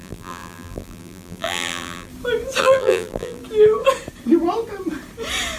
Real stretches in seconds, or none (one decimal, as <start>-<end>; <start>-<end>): 2.1-2.6; 3.4-5.6